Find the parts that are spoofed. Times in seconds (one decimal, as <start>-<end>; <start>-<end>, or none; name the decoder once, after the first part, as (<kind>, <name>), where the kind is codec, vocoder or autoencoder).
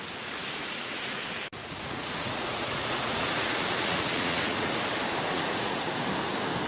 0.6-1.2 (vocoder, Vocos); 1.6-4.7; 5.3-5.9